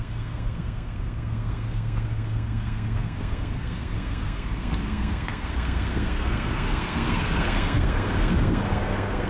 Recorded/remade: remade